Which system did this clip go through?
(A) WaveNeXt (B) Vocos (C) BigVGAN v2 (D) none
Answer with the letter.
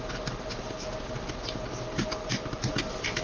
D